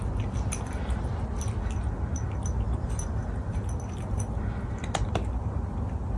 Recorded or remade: recorded